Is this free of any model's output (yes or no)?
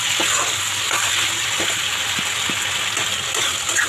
yes